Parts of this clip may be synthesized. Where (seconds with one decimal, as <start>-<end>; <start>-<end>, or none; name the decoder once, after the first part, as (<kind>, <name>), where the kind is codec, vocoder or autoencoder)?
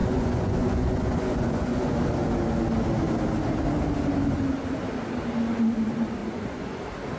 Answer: 0.0-1.9 (vocoder, Vocos); 6.2-6.8